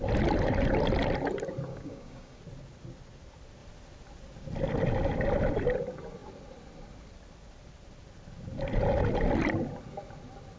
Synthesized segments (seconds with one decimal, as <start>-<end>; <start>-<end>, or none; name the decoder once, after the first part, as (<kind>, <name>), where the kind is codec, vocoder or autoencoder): 1.7-2.4 (codec, DAC)